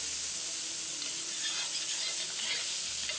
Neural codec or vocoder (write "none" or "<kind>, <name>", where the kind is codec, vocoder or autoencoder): none